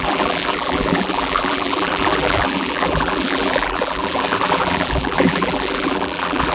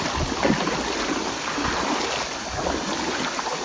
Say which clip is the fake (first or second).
first